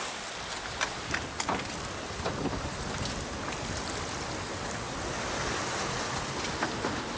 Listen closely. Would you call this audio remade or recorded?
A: recorded